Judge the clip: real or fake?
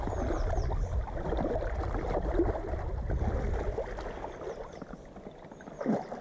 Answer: real